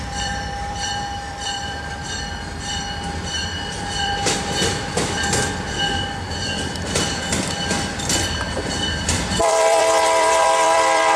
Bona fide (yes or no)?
no